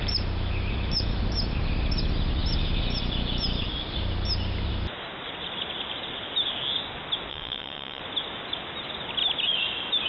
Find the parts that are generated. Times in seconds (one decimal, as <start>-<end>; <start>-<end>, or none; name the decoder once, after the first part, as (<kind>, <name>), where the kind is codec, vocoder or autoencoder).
7.3-8.0 (vocoder, WaveNeXt)